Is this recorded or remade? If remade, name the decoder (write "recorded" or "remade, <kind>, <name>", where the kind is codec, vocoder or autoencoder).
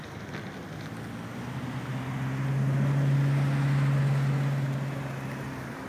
recorded